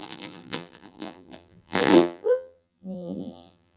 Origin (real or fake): fake